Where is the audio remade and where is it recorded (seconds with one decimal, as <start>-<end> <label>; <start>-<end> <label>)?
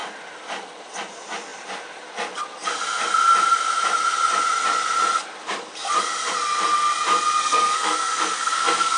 0.0-7.4 recorded; 7.4-9.0 remade